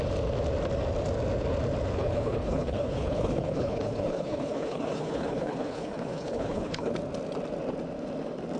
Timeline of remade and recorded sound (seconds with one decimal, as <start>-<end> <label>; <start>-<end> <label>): 0.0-2.0 recorded; 2.0-6.9 remade; 6.9-8.6 recorded